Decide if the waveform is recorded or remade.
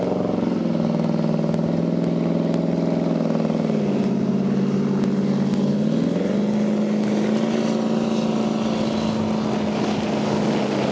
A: recorded